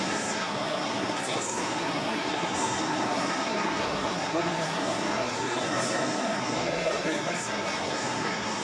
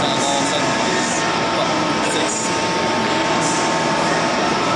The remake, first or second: first